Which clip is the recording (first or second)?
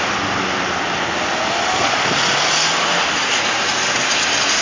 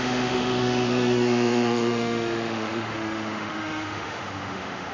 first